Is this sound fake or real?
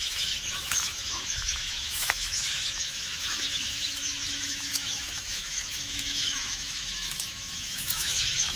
fake